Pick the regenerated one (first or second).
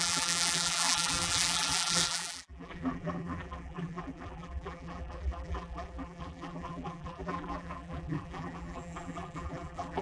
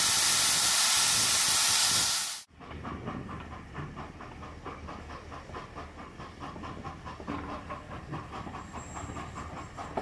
first